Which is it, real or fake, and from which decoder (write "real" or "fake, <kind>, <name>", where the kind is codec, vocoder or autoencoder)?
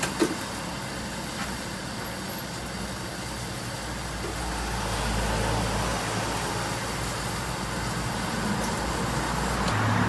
real